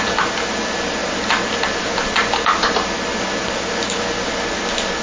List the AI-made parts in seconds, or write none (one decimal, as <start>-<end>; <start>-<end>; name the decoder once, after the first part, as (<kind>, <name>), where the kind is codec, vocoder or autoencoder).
none